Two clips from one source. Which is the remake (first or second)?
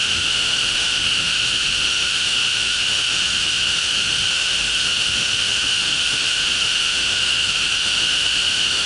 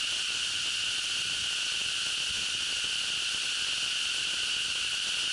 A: first